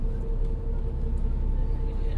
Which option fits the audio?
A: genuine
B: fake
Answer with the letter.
A